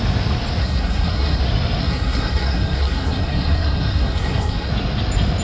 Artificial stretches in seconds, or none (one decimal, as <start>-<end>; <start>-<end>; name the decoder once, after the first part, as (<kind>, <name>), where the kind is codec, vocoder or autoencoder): 0.6-1.4 (codec, SNAC); 1.8-4.7